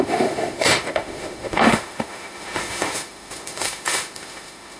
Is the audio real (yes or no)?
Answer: no